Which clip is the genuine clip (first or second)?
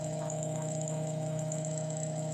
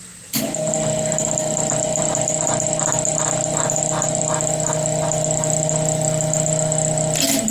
second